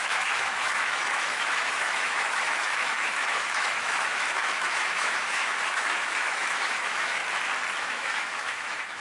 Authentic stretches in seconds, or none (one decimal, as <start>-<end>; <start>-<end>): 7.2-7.8